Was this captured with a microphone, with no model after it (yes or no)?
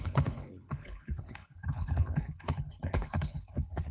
no